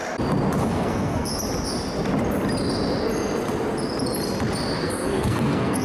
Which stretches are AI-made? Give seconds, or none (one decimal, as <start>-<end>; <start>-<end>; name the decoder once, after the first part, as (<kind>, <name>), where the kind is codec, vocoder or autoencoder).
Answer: 0.6-1.3 (codec, SNAC); 4.8-5.8